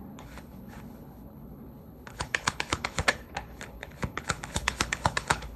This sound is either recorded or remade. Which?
remade